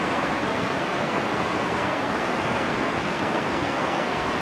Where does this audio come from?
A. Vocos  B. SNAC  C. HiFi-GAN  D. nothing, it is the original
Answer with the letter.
B